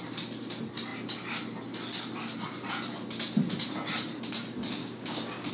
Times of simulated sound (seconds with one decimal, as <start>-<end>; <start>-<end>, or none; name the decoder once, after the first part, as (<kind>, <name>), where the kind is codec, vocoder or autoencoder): 4.8-5.5 (codec, DAC)